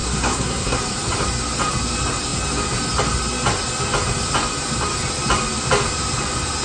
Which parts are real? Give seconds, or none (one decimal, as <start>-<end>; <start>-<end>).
0.8-6.6